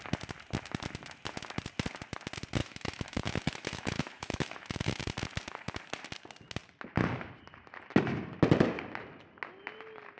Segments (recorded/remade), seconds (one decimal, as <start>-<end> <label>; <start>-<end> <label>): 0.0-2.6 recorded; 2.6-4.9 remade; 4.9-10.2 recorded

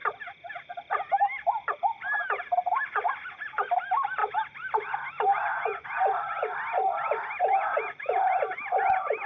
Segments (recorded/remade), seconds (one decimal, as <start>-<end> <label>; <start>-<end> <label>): 0.0-9.3 recorded

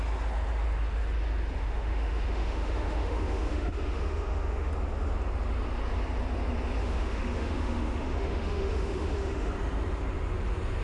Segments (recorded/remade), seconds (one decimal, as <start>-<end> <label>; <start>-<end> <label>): 0.0-1.6 recorded; 1.6-4.7 remade; 4.7-6.8 recorded; 6.8-9.5 remade; 9.5-10.8 recorded